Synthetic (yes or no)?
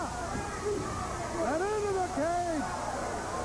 no